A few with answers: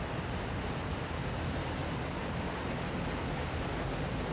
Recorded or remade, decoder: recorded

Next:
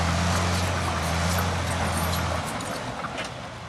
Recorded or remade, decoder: recorded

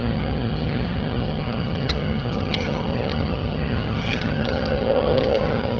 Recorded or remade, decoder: remade, vocoder, HiFi-GAN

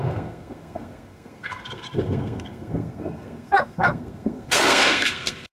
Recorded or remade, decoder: remade, codec, SNAC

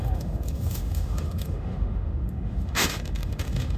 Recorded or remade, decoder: remade, autoencoder, DAC-VAE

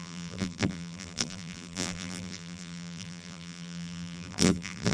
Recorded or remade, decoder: remade, vocoder, BigVGAN v2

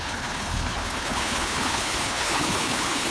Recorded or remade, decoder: remade, codec, HILCodec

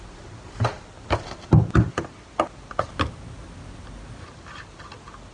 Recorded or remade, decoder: recorded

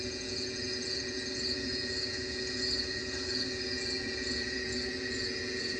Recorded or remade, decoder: remade, vocoder, Vocos